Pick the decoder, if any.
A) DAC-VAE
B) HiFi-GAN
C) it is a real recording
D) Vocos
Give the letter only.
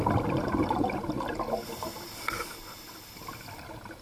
C